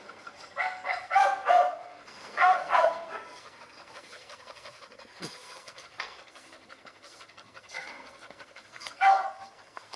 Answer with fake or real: fake